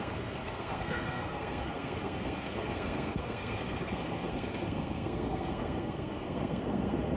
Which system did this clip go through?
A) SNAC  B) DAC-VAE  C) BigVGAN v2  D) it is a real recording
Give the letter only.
A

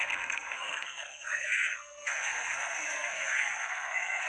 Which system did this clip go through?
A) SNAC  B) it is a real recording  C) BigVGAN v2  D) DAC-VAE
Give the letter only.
A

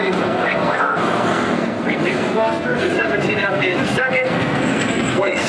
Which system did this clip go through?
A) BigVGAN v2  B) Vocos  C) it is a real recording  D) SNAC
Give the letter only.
D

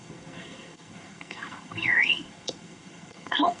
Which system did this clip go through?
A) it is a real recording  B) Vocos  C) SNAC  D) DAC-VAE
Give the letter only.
C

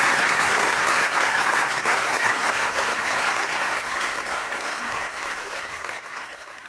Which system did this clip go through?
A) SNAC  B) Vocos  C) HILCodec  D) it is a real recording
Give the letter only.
A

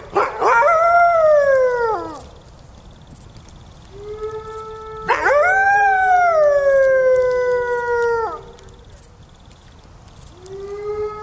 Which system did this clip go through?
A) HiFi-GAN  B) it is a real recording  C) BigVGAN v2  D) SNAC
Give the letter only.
B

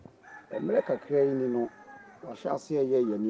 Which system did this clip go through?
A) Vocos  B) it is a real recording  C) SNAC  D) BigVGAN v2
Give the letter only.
B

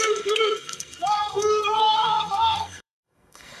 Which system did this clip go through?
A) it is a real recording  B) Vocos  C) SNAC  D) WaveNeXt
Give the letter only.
C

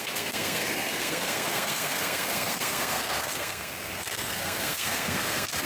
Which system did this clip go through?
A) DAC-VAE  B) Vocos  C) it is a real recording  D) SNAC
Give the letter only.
D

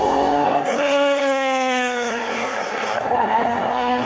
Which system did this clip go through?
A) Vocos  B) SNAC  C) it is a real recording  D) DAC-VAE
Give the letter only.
B